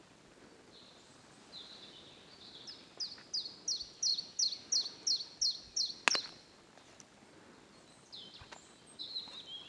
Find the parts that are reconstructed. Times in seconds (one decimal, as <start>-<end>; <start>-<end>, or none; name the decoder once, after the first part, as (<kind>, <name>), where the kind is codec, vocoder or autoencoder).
none